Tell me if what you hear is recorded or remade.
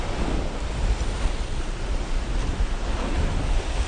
recorded